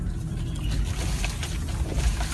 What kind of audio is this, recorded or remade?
recorded